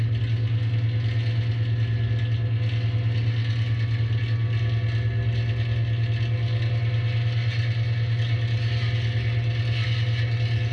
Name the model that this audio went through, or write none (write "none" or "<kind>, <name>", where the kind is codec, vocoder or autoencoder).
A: none